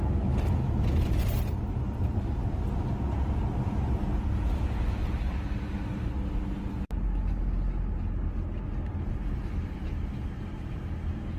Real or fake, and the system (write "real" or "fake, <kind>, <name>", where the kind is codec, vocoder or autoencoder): real